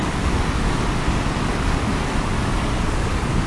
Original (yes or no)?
no